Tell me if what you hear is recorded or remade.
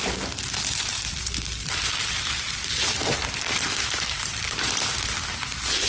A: remade